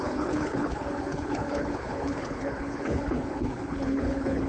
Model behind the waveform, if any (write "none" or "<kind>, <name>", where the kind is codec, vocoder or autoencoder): codec, HILCodec